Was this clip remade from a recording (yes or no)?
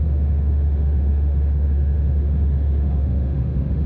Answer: yes